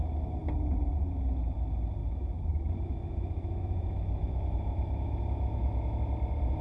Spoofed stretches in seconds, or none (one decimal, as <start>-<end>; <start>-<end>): 2.0-6.0